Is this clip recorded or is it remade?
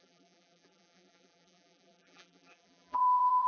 remade